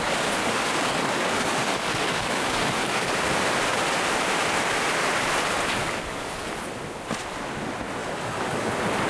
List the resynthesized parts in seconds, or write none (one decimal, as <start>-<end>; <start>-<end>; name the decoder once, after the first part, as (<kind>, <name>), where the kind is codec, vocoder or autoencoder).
0.4-3.1 (codec, DAC); 5.8-6.5; 8.0-8.7